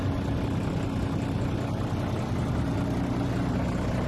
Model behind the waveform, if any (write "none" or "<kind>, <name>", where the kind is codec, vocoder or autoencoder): none